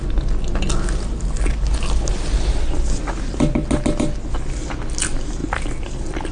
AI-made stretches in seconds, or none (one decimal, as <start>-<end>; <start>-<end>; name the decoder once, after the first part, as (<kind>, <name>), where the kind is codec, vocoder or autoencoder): none